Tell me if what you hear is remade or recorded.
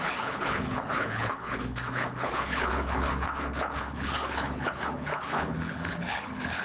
remade